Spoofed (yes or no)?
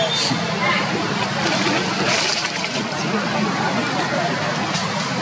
no